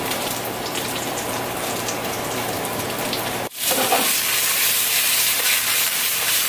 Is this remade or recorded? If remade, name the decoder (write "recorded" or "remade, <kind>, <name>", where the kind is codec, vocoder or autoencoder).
remade, vocoder, BigVGAN v2